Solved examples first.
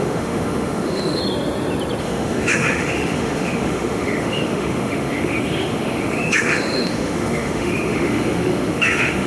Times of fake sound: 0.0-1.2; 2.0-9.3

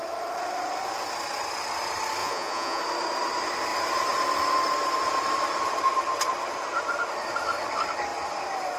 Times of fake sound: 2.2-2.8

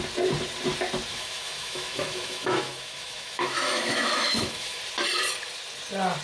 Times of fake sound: 1.1-4.8

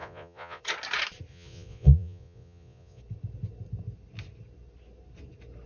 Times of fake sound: 0.0-0.6; 1.3-3.0

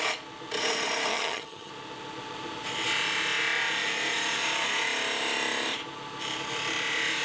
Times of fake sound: 1.1-1.7